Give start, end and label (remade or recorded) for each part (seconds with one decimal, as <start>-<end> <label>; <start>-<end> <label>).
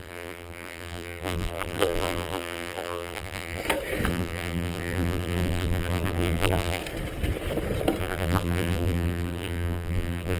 0.0-3.6 remade; 3.6-4.1 recorded; 4.1-6.8 remade; 6.8-8.0 recorded; 8.0-10.4 remade